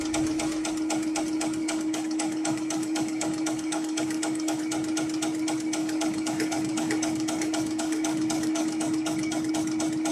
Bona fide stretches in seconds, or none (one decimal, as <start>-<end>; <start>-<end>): 0.0-1.6; 4.6-5.8; 9.5-10.1

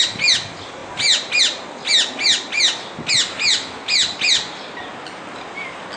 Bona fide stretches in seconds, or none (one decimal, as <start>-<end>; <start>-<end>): 0.0-6.0

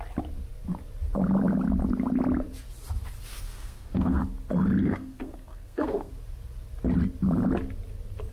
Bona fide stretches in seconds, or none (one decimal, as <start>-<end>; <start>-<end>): 0.0-3.3; 4.2-4.8; 6.1-8.3